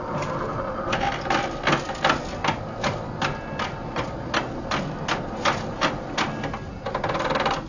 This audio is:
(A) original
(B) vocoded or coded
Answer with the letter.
A